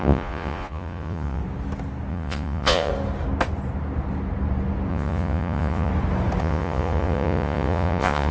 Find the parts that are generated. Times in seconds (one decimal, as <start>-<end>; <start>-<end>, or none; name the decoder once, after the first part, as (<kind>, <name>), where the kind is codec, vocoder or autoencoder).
0.0-1.4 (vocoder, Vocos); 2.1-2.9; 4.9-5.9; 6.4-8.3